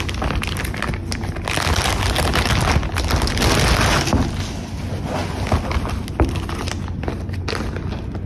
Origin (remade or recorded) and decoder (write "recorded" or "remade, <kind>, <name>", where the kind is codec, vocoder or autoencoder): recorded